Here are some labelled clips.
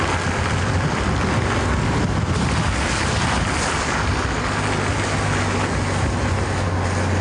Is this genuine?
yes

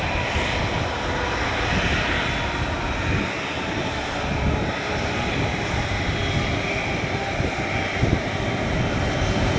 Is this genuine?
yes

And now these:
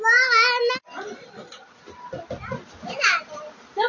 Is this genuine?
yes